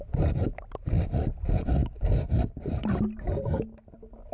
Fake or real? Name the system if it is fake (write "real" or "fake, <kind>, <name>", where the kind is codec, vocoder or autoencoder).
real